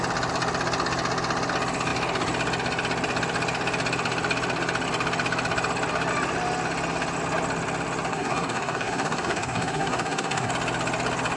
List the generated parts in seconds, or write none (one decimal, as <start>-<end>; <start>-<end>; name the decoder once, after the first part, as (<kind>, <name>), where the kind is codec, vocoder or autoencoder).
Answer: 8.1-10.5 (codec, SNAC)